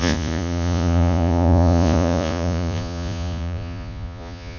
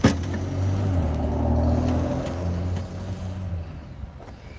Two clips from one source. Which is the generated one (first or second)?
first